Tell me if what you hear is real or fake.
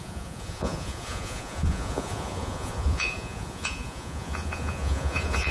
fake